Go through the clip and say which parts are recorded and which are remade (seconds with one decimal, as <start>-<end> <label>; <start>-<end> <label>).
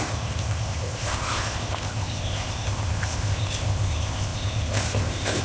0.0-5.4 remade